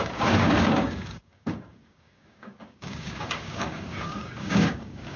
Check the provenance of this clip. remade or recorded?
remade